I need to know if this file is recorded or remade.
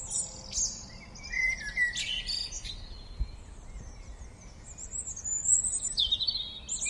recorded